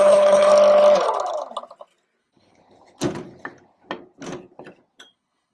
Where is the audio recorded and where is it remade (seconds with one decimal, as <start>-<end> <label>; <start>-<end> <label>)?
0.0-0.5 remade; 0.5-2.2 recorded; 2.2-2.6 remade; 2.6-5.1 recorded; 5.1-5.5 remade